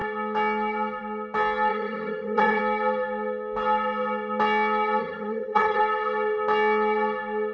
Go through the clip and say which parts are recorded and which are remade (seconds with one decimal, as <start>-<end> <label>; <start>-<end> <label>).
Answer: 0.0-1.7 recorded; 1.7-2.6 remade; 2.6-5.0 recorded; 5.0-5.8 remade; 5.8-7.5 recorded